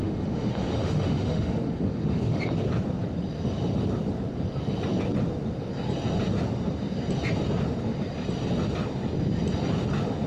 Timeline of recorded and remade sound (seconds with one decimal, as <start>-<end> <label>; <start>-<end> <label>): 0.0-2.4 remade; 2.4-10.3 recorded